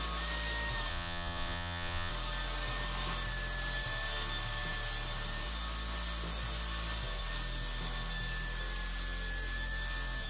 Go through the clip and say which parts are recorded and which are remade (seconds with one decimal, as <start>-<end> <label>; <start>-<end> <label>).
0.0-0.9 recorded; 0.9-2.1 remade; 2.1-10.3 recorded